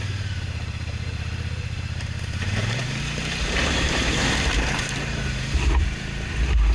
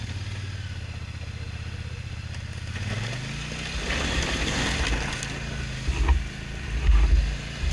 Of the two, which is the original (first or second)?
second